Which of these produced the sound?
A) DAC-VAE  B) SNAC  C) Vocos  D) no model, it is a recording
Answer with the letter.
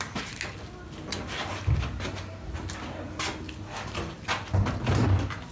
D